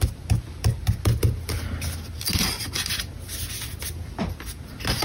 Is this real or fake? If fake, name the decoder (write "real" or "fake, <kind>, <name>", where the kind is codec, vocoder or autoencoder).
real